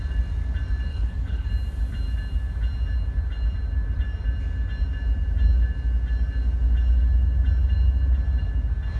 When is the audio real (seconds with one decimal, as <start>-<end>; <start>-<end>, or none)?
0.0-0.9; 1.5-9.0